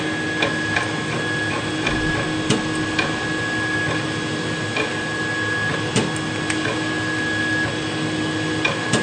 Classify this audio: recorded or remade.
recorded